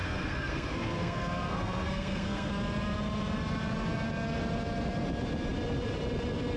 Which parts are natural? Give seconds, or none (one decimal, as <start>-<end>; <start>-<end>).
2.5-6.6